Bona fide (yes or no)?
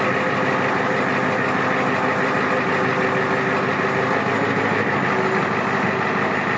yes